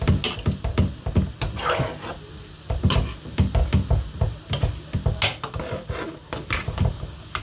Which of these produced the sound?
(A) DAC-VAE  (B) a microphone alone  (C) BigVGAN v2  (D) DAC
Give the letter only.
B